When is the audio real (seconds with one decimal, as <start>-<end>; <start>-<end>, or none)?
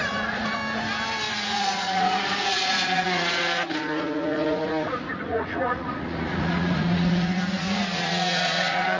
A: 0.6-1.3